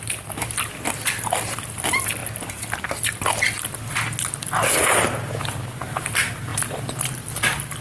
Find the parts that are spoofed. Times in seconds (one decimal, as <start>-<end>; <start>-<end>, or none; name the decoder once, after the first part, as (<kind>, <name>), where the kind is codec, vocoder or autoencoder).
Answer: 0.0-2.2 (vocoder, BigVGAN v2); 5.4-7.8